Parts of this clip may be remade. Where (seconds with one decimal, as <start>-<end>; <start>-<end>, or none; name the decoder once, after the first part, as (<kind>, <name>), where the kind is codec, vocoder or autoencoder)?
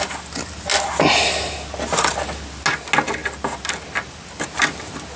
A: none